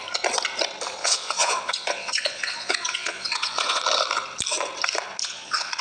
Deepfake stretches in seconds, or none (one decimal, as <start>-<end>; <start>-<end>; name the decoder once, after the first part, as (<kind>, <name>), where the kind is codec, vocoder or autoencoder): 1.0-3.8 (vocoder, Vocos); 5.2-5.8